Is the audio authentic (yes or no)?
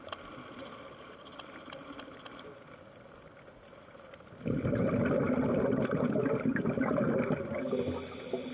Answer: yes